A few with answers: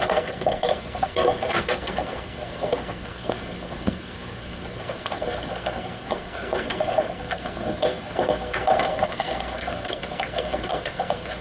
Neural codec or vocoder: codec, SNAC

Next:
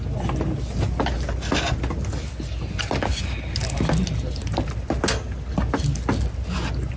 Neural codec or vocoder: none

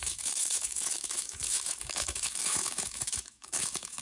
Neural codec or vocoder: autoencoder, DAC-VAE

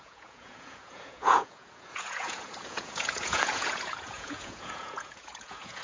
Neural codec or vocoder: vocoder, Vocos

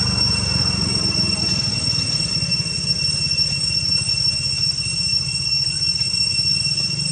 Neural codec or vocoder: none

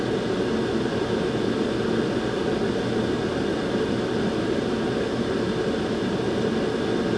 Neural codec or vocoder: none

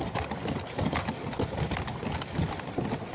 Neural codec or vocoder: none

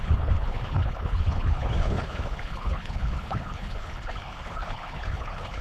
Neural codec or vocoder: codec, HILCodec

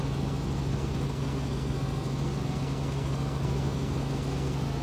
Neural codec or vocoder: codec, SNAC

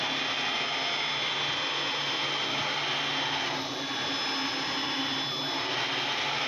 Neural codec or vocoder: none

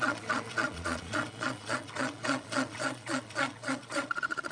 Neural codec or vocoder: vocoder, Vocos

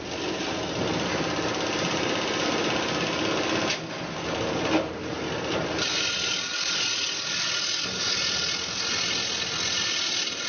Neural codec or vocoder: none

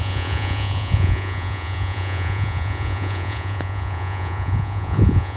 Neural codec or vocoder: vocoder, Vocos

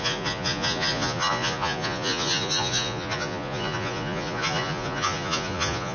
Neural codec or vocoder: vocoder, Vocos